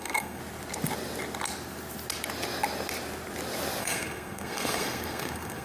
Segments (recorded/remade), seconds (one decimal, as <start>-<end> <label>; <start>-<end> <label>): 0.0-0.4 remade; 0.4-3.8 recorded; 3.8-5.6 remade